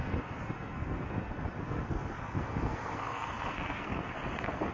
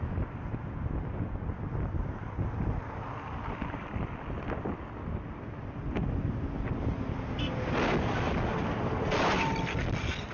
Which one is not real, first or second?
first